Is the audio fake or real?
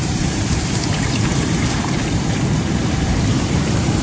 fake